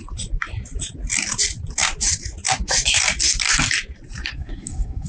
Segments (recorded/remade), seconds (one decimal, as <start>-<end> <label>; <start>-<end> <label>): 0.0-4.3 recorded; 4.3-5.1 remade